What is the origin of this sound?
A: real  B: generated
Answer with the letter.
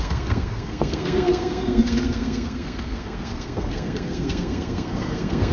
B